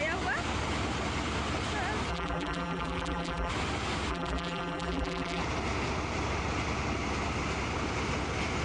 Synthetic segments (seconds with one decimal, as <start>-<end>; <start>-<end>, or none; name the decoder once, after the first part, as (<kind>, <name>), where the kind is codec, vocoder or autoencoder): 2.1-3.5 (vocoder, BigVGAN v2); 4.1-5.4